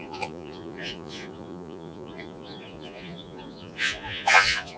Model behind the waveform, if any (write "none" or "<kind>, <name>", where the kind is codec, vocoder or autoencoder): vocoder, Vocos